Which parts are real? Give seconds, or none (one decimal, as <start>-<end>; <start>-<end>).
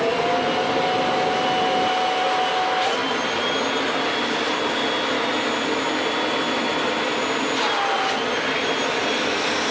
0.0-9.7